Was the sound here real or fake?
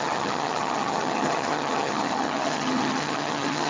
fake